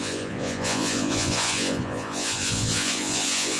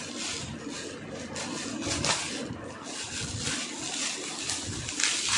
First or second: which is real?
second